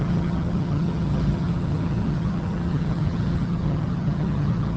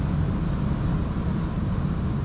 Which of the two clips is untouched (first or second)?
second